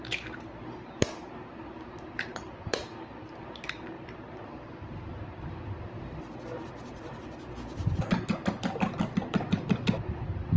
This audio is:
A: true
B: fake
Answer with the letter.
B